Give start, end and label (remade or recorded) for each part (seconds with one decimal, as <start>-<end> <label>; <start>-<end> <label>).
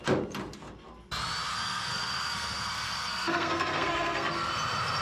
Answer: 0.0-1.5 recorded; 1.5-4.5 remade; 4.5-5.0 recorded